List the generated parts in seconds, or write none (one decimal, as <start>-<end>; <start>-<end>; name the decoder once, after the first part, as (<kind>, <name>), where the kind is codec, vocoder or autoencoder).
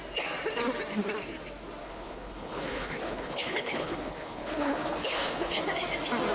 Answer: 1.8-5.6 (codec, HILCodec)